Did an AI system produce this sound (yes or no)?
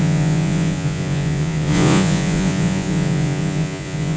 yes